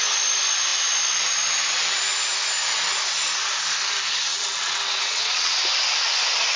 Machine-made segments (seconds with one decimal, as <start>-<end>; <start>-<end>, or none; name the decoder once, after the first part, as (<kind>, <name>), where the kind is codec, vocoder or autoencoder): 4.3-5.6 (vocoder, WaveNeXt)